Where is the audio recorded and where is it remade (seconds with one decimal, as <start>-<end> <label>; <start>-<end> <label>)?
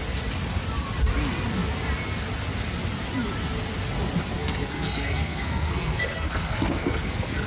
0.0-4.4 recorded; 4.4-7.5 remade